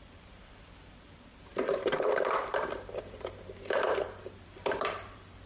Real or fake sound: fake